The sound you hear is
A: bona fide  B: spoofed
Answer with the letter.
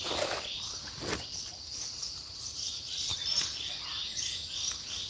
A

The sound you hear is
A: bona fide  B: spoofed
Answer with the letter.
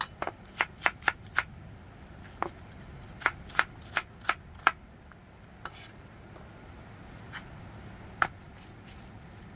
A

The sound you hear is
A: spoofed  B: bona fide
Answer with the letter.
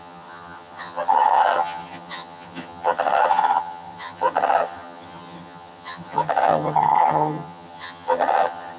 A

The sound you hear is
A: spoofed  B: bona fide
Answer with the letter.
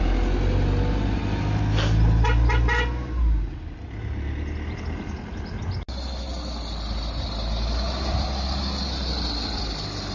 B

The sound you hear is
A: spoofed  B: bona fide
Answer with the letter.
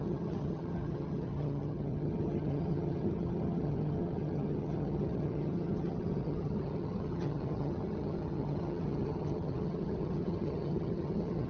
A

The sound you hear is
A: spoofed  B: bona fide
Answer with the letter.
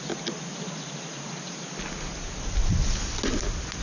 B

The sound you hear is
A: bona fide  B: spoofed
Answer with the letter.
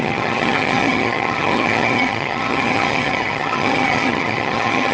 B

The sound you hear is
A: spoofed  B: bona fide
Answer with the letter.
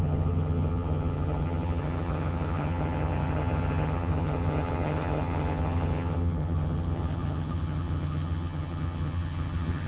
A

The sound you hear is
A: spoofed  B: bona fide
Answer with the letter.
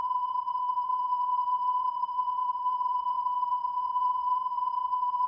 A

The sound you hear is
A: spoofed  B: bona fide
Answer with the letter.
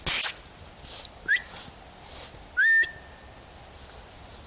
B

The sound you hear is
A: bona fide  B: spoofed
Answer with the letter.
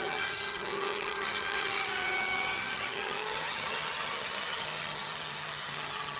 B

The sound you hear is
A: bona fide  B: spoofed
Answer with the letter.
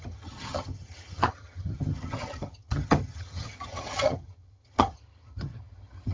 B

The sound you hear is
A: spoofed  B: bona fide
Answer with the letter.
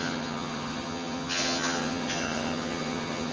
A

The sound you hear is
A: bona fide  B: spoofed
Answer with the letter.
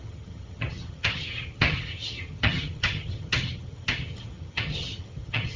B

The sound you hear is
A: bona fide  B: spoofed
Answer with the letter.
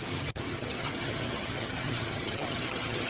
B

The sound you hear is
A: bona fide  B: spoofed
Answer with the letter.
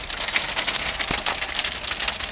A